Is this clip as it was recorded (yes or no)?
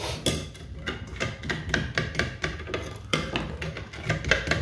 yes